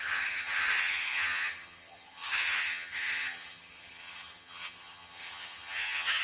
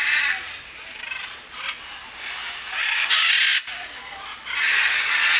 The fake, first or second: first